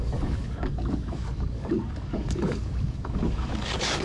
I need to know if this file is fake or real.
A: fake